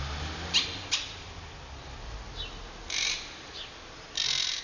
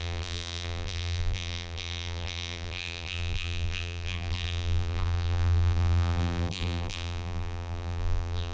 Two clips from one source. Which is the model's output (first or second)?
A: second